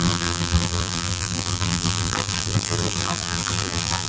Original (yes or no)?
no